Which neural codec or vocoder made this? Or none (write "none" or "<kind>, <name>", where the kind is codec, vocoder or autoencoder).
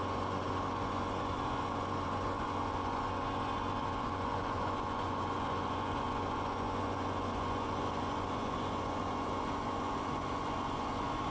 vocoder, Vocos